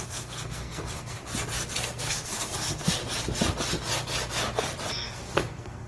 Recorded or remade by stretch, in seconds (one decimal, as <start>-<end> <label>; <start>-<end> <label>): 0.0-1.2 remade; 1.2-1.8 recorded; 1.8-3.0 remade; 3.0-4.9 recorded; 4.9-5.9 remade